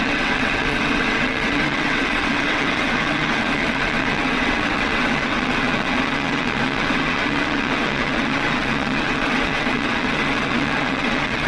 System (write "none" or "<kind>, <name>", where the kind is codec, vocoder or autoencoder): vocoder, WaveNeXt